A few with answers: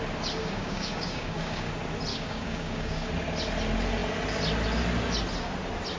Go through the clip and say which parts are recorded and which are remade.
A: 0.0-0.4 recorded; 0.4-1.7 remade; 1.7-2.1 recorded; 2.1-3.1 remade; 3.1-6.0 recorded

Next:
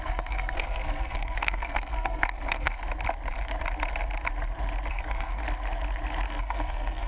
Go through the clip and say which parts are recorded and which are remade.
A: 0.0-2.8 remade; 2.8-4.9 recorded; 4.9-5.4 remade; 5.4-6.3 recorded; 6.3-7.1 remade

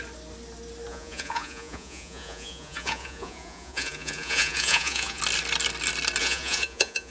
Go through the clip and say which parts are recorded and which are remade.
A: 0.0-0.9 recorded; 0.9-5.2 remade; 5.2-6.2 recorded; 6.2-7.1 remade

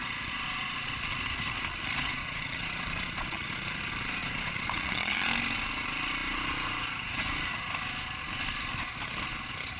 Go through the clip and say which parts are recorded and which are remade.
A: 0.0-0.9 remade; 0.9-2.1 recorded; 2.1-3.5 remade; 3.5-4.2 recorded; 4.2-5.3 remade; 5.3-9.8 recorded

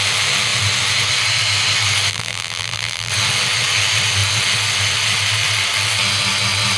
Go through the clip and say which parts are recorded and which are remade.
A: 0.0-2.1 recorded; 2.1-3.1 remade; 3.1-6.8 recorded

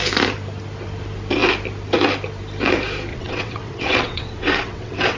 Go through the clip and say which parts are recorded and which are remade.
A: 0.0-3.1 recorded; 3.1-5.2 remade

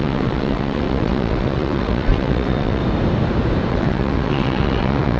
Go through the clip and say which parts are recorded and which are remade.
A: 0.0-2.8 remade; 2.8-3.7 recorded; 3.7-5.2 remade

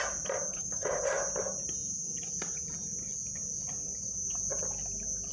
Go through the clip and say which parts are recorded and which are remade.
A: 0.0-0.5 recorded; 0.5-1.0 remade; 1.0-5.3 recorded